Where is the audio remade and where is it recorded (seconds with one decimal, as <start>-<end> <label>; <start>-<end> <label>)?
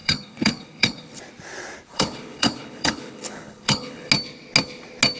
0.0-1.2 remade; 1.2-1.9 recorded; 1.9-4.1 remade; 4.1-5.2 recorded